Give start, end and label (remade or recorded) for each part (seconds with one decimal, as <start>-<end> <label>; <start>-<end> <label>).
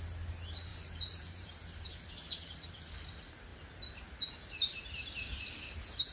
0.0-0.7 recorded; 0.7-1.6 remade; 1.6-6.1 recorded